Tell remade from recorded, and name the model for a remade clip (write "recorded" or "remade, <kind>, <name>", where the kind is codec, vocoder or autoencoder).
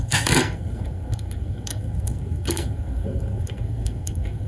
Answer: remade, codec, SNAC